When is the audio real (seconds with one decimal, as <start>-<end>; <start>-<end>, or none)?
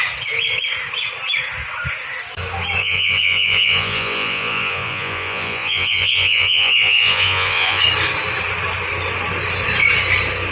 0.0-2.8; 7.8-10.5